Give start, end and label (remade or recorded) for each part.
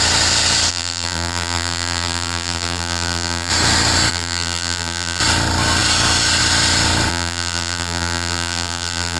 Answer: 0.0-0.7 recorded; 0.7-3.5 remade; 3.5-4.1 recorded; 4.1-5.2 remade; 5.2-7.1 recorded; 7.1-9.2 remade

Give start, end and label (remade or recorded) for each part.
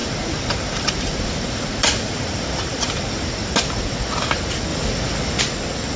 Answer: 0.0-3.6 remade; 3.6-6.0 recorded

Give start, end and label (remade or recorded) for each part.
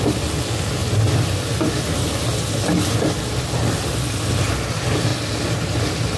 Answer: 0.0-6.2 recorded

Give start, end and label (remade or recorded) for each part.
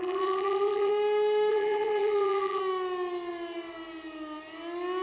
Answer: 0.0-0.9 remade; 0.9-1.5 recorded; 1.5-2.6 remade; 2.6-5.0 recorded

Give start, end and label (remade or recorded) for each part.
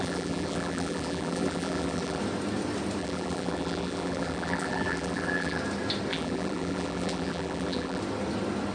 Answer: 0.0-2.2 remade; 2.2-3.0 recorded; 3.0-5.6 remade; 5.6-6.1 recorded; 6.1-8.0 remade; 8.0-8.7 recorded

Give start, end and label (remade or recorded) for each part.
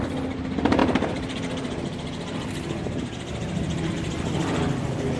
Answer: 0.0-0.8 recorded; 0.8-3.9 remade; 3.9-5.2 recorded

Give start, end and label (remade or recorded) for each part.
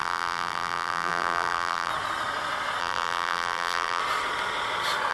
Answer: 0.0-1.9 remade; 1.9-2.8 recorded; 2.8-4.0 remade; 4.0-5.1 recorded